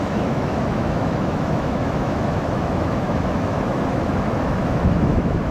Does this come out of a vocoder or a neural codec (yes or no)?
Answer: yes